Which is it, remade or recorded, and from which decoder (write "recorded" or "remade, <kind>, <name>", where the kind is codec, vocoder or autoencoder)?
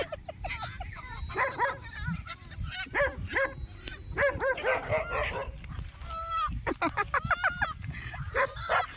recorded